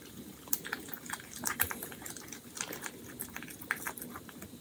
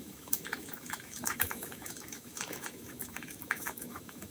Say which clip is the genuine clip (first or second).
first